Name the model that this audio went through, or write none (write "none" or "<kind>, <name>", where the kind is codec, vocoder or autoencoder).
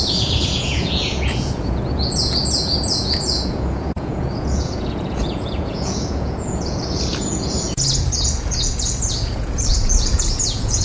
vocoder, Vocos